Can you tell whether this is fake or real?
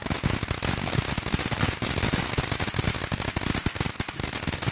real